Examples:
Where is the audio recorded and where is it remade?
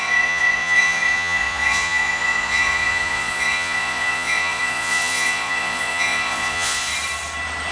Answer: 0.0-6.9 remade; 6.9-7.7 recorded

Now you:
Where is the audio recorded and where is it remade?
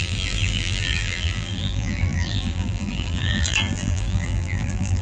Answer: 0.0-5.0 remade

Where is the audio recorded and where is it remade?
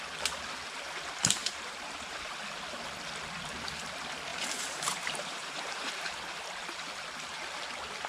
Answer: 0.0-1.4 recorded; 1.4-2.3 remade; 2.3-4.3 recorded; 4.3-6.0 remade; 6.0-8.1 recorded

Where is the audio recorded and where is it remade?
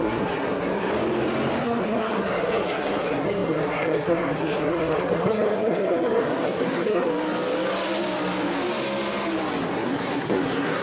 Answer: 0.0-0.9 remade; 0.9-1.6 recorded; 1.6-7.1 remade; 7.1-9.7 recorded; 9.7-10.8 remade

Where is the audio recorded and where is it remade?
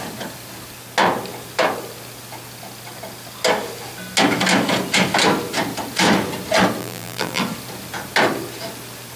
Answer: 0.0-6.8 recorded; 6.8-7.4 remade; 7.4-9.2 recorded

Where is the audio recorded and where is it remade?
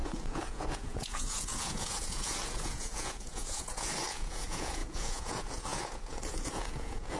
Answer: 0.0-7.2 remade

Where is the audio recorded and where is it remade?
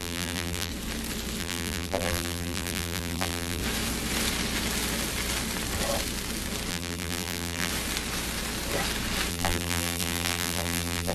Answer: 0.0-0.7 remade; 0.7-1.4 recorded; 1.4-3.6 remade; 3.6-6.7 recorded; 6.7-7.7 remade; 7.7-9.3 recorded; 9.3-11.1 remade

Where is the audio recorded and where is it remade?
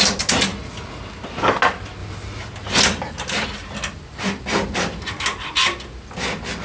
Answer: 0.0-6.6 recorded